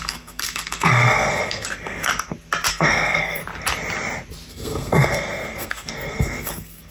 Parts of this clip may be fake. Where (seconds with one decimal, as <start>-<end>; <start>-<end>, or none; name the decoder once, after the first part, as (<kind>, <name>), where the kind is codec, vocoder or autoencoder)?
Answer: 0.0-2.1 (codec, SNAC); 2.7-3.4; 4.5-6.9